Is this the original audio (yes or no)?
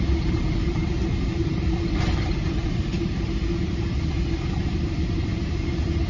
no